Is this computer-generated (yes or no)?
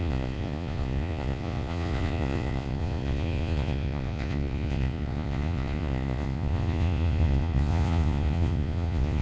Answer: yes